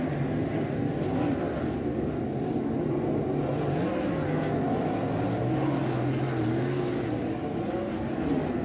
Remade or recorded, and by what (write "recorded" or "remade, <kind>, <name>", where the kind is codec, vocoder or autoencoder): recorded